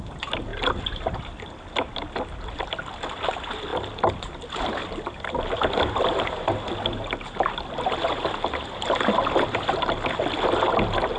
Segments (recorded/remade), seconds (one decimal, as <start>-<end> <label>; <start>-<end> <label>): 0.0-11.2 recorded